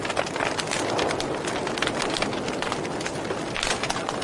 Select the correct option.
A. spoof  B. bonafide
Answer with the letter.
B